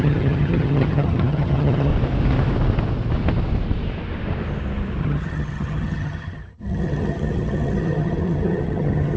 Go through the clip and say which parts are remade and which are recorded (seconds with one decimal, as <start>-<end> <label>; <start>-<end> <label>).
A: 0.0-1.9 remade; 1.9-5.0 recorded; 5.0-9.2 remade